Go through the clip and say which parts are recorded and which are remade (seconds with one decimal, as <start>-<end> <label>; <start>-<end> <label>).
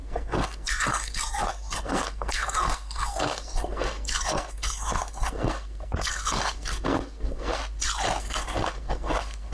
0.0-7.6 remade; 7.6-8.2 recorded; 8.2-9.5 remade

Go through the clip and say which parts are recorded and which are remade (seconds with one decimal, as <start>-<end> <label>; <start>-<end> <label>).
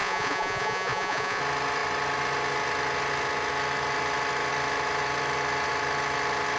0.0-1.4 remade; 1.4-6.6 recorded